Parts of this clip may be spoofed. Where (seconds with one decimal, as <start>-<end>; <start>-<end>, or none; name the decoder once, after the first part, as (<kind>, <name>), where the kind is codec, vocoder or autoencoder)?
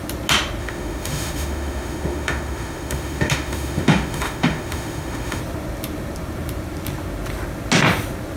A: 0.6-5.4 (autoencoder, DAC-VAE)